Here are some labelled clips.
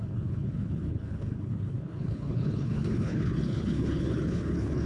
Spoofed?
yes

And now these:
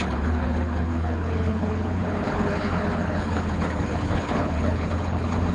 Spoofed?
yes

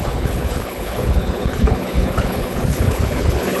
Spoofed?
yes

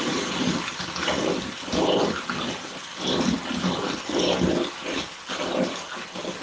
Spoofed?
no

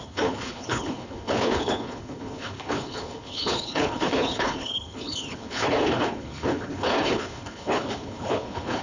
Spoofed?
yes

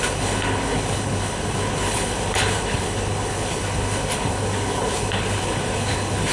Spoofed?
yes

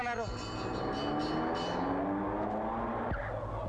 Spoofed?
no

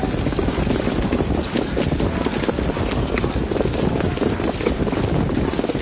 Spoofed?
no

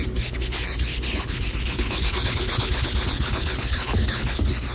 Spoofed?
yes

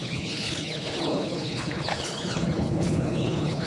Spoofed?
yes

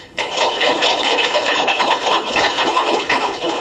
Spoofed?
yes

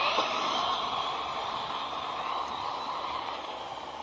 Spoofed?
no